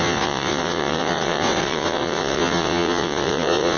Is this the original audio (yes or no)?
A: no